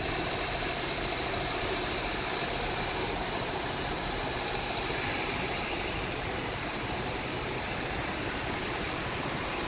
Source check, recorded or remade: recorded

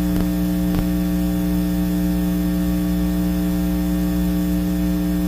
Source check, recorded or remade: recorded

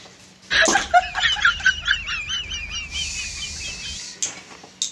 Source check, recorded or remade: recorded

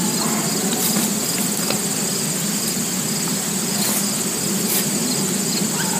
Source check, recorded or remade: recorded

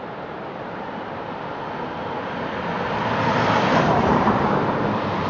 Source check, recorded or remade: remade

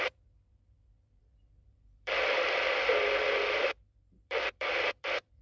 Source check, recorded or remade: remade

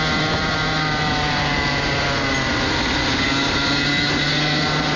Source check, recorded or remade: recorded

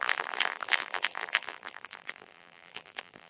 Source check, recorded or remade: remade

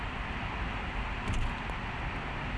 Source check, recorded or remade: recorded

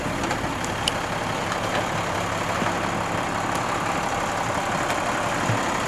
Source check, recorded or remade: remade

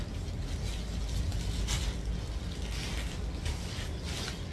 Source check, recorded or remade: recorded